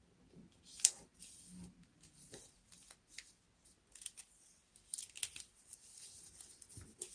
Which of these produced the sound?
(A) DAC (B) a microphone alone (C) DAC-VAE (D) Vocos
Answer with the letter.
B